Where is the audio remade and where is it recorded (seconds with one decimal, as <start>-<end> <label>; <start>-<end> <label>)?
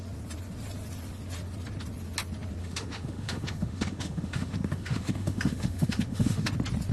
0.0-2.6 recorded; 2.6-6.5 remade; 6.5-6.9 recorded